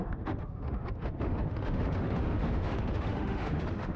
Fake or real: fake